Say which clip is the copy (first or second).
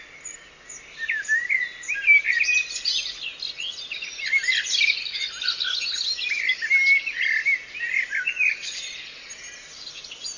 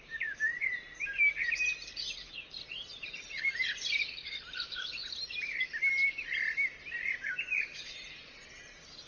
second